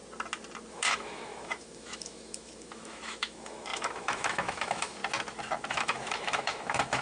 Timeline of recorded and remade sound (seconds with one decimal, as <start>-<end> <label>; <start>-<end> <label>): 0.0-0.7 recorded; 0.7-5.0 remade; 5.0-5.7 recorded; 5.7-7.0 remade